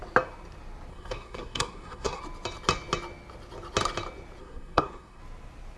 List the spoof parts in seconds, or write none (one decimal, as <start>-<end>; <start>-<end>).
0.9-2.2; 4.4-5.2

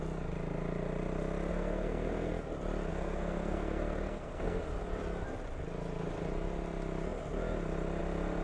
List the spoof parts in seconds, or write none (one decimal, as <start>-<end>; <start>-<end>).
1.5-2.3; 2.9-4.6

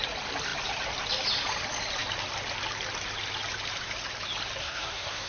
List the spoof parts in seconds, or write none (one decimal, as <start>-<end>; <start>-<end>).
4.6-5.3

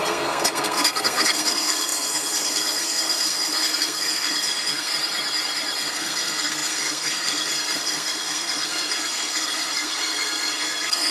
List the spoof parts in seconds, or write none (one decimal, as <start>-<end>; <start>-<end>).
0.0-4.9; 5.8-11.1

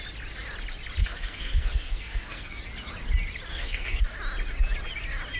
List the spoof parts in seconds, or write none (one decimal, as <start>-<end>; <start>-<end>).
1.0-2.6; 3.5-4.0

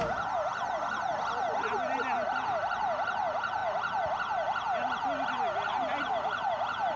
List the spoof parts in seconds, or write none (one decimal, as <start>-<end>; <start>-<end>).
none